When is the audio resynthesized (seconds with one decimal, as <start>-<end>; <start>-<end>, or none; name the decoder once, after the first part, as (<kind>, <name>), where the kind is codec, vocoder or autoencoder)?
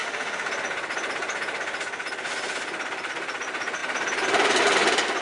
0.0-0.5 (autoencoder, DAC-VAE)